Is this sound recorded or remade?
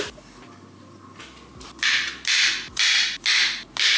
recorded